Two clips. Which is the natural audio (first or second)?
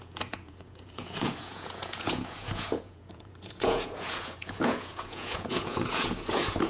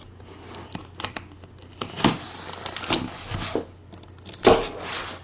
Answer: second